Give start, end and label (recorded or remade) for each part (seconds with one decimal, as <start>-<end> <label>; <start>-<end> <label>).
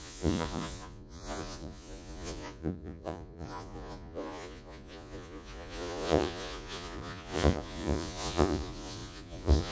0.0-9.7 remade